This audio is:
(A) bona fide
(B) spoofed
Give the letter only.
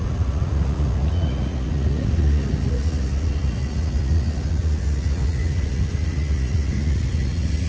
B